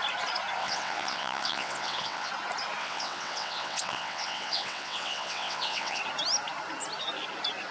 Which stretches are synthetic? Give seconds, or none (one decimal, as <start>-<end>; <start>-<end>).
0.6-2.3; 2.8-6.0